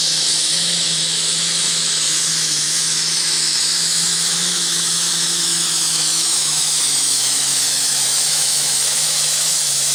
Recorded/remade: remade